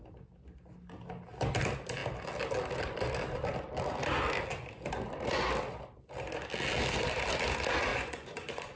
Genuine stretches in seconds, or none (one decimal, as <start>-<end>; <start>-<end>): 0.0-7.9